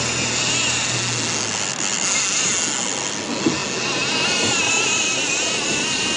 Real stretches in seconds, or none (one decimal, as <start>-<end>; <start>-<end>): 0.0-6.2